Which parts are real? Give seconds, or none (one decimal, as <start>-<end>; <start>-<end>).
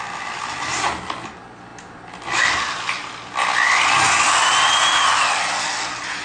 0.0-6.2